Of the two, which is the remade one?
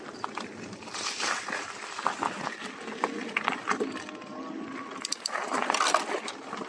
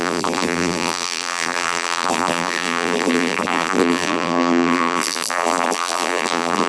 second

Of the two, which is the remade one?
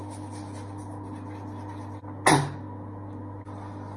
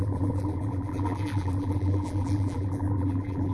second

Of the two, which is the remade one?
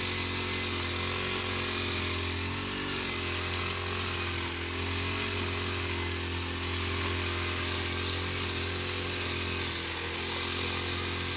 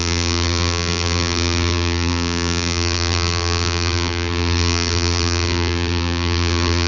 second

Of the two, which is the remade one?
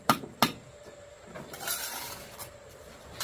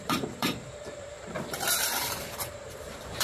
second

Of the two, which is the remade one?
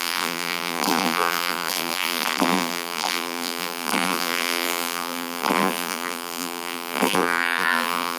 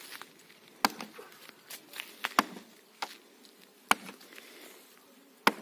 first